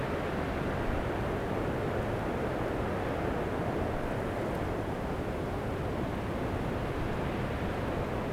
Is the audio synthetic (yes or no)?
no